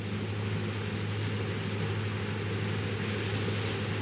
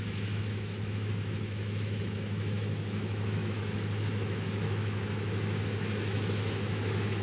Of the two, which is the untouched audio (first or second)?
first